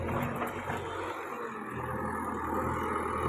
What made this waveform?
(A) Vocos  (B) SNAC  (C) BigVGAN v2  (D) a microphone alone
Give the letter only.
D